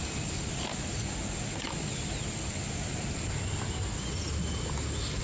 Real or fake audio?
real